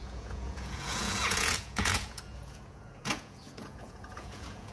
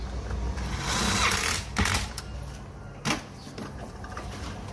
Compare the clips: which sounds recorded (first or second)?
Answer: second